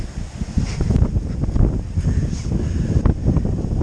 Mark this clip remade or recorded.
recorded